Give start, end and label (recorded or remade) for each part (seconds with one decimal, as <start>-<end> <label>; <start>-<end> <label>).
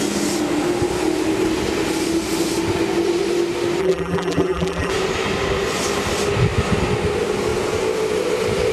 0.0-3.8 recorded; 3.8-4.9 remade; 4.9-8.7 recorded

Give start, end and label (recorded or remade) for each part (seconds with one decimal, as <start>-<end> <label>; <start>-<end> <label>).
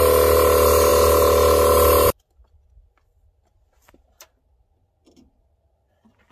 0.0-6.3 recorded